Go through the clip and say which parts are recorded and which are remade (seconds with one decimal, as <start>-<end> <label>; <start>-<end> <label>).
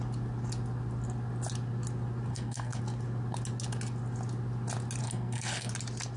0.0-2.3 recorded; 2.3-2.8 remade; 2.8-5.0 recorded; 5.0-5.7 remade; 5.7-6.2 recorded